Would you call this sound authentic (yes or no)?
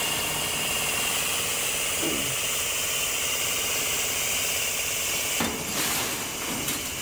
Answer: no